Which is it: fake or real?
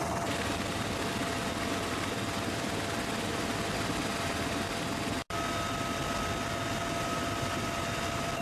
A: real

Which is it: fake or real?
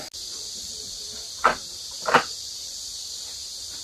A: real